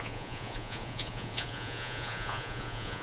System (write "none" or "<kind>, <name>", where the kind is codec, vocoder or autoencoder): vocoder, Vocos